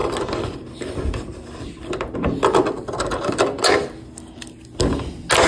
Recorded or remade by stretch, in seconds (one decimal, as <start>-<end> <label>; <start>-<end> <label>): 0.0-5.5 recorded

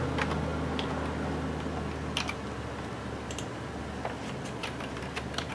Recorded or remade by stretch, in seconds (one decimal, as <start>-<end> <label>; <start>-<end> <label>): 0.0-4.6 recorded; 4.6-5.5 remade

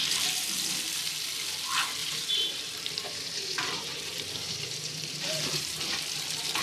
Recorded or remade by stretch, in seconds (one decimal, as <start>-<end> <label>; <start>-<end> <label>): 0.0-2.0 recorded; 2.0-6.0 remade; 6.0-6.6 recorded

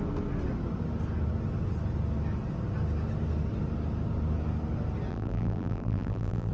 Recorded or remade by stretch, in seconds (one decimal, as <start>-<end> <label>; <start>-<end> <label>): 0.0-5.1 recorded; 5.1-6.5 remade

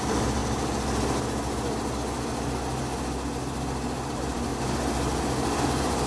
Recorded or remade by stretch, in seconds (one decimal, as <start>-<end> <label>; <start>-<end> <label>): 0.0-0.4 remade; 0.4-4.1 recorded; 4.1-4.5 remade; 4.5-5.6 recorded; 5.6-6.1 remade